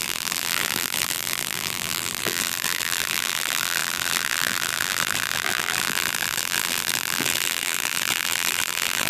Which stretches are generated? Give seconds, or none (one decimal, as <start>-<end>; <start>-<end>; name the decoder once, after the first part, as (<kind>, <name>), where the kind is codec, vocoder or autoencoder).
0.0-9.1 (vocoder, BigVGAN v2)